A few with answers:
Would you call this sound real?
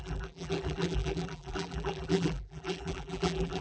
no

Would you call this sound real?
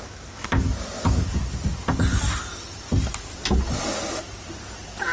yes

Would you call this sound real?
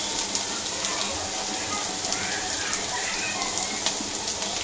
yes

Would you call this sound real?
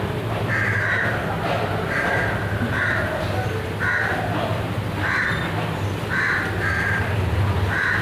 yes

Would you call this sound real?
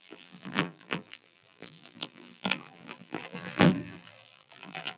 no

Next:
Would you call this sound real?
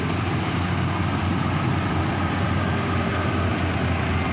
yes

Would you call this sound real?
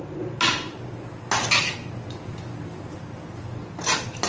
yes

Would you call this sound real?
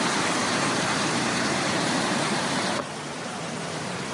no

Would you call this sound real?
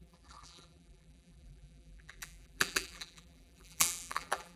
no